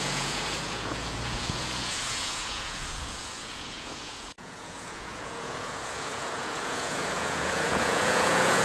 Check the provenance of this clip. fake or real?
fake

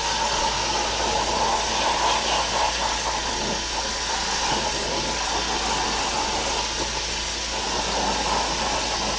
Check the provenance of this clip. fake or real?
real